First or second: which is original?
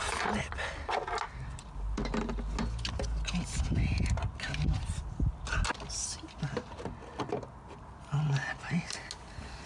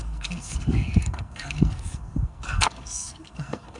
first